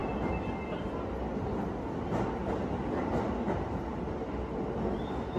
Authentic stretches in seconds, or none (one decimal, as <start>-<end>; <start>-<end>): 0.0-5.4